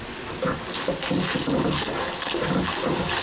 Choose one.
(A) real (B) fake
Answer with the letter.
A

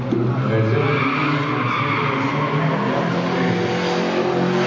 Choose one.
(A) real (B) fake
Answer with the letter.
A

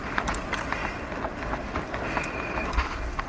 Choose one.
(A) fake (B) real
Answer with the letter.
B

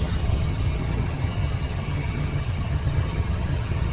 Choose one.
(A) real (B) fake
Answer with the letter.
B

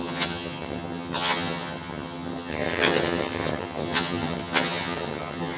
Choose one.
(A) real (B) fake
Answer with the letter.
B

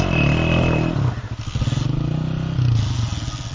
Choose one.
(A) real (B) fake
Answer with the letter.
A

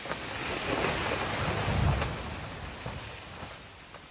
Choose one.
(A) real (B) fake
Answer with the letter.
A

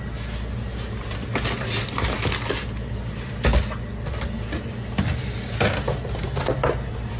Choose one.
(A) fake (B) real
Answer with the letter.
B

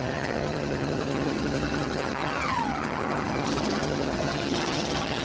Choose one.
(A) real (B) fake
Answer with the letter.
B